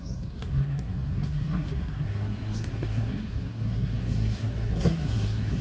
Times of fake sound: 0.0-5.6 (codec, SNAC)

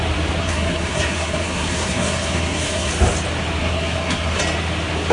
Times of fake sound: 0.4-2.9 (codec, SNAC); 3.6-4.4

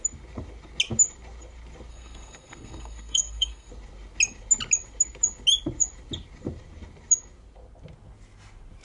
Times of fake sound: 1.9-3.7 (codec, SNAC)

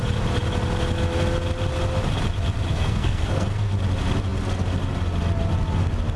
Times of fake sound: 2.7-3.7 (codec, SNAC)